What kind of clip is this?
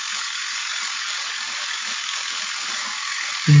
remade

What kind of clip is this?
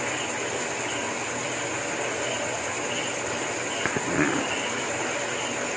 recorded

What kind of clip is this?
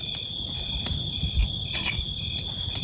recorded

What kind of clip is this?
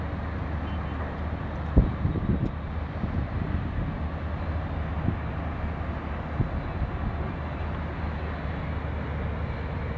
recorded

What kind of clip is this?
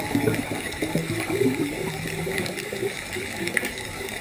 remade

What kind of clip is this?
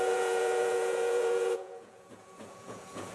remade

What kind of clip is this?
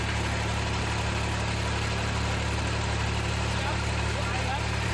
recorded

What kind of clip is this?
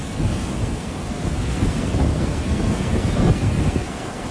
remade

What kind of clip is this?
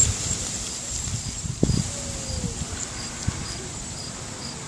recorded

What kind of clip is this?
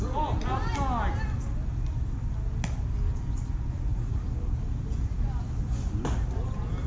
recorded